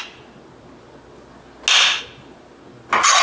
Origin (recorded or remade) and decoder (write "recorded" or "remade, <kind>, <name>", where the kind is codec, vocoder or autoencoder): recorded